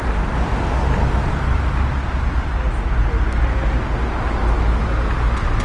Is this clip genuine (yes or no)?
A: yes